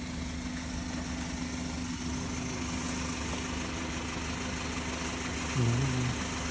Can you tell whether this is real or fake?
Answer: real